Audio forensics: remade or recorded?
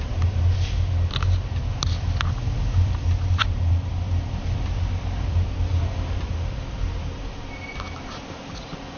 recorded